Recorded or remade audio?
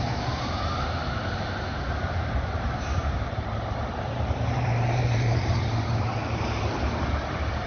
remade